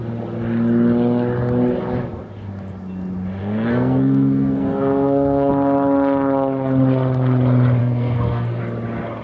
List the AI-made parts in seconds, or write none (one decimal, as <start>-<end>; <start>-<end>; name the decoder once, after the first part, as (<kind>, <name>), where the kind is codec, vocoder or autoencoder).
3.4-5.5 (codec, SNAC); 7.8-8.6